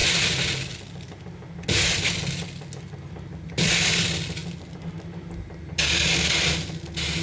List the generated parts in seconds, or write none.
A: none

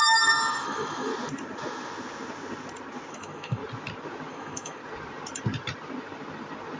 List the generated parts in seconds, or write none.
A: 0.0-1.1 (autoencoder, DAC-VAE); 3.1-3.6; 4.3-4.8

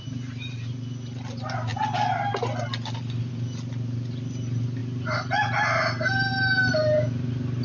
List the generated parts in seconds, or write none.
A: none

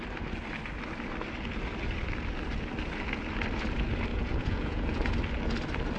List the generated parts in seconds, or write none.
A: 4.1-5.1 (vocoder, Vocos)

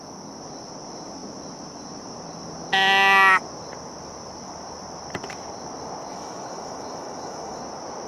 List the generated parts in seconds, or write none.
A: 6.1-7.6 (autoencoder, DAC-VAE)

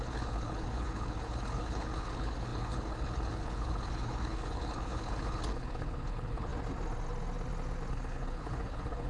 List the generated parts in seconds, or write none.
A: 0.0-6.5 (codec, HILCodec); 7.9-9.1

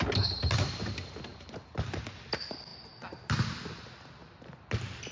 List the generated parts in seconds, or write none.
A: 2.7-3.2 (vocoder, BigVGAN v2)